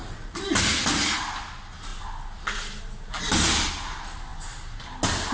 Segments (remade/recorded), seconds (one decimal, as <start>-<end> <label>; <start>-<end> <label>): 0.0-5.3 recorded